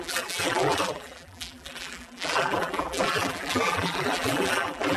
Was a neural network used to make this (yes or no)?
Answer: yes